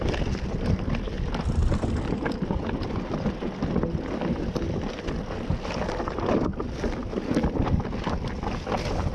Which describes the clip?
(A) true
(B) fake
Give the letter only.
A